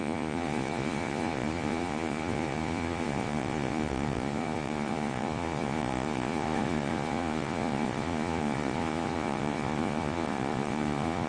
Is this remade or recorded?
remade